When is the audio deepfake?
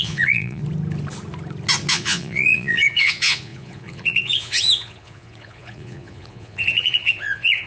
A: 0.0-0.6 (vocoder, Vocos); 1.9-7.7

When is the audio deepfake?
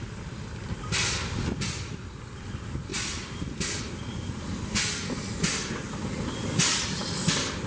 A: none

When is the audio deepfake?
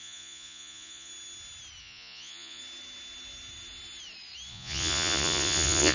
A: 0.0-1.1 (vocoder, Vocos); 1.8-2.6; 4.5-5.9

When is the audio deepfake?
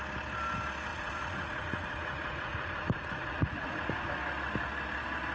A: 0.9-4.1 (vocoder, Vocos)